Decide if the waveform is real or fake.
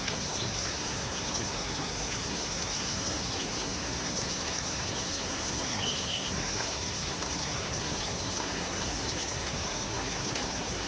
fake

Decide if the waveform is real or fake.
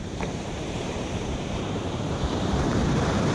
fake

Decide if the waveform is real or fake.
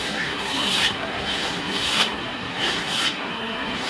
fake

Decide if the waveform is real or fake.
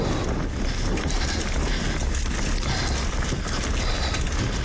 real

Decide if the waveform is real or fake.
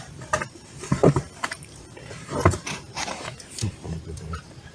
fake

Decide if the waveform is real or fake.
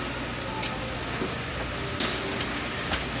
real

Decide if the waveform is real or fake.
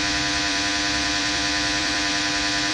fake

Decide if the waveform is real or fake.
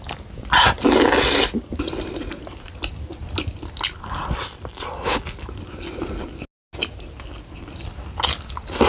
real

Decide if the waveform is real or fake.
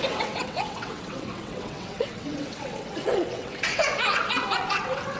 fake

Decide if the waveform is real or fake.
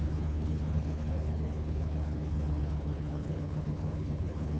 fake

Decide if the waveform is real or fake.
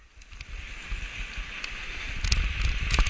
real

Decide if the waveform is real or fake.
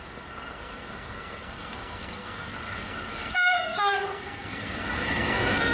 fake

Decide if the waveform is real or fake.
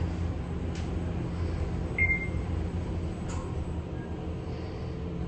real